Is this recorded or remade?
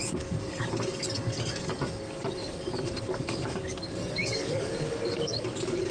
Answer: remade